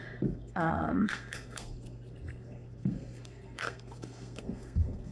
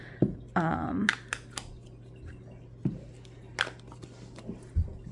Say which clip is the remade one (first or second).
first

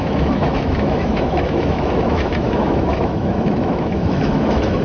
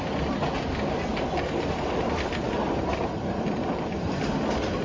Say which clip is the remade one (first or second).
first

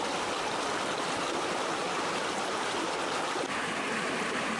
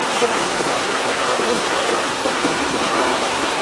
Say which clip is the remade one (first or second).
second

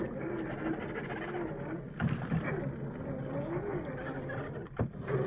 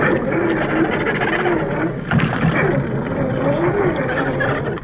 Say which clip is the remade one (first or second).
second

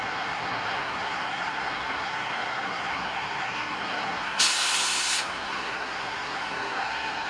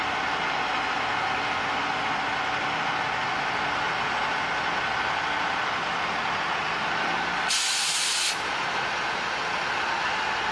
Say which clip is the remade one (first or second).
first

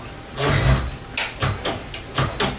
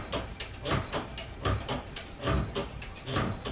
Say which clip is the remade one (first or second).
second